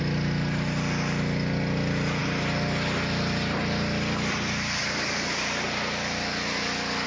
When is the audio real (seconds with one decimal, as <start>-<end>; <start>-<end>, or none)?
0.0-7.1